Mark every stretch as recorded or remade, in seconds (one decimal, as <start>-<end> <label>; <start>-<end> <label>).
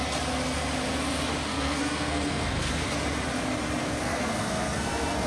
0.0-1.5 recorded; 1.5-2.7 remade; 2.7-3.8 recorded; 3.8-5.3 remade